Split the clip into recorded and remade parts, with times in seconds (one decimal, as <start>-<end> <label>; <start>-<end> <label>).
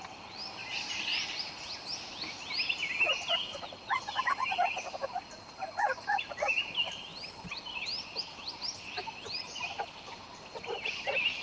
0.0-0.6 recorded; 0.6-1.5 remade; 1.5-11.4 recorded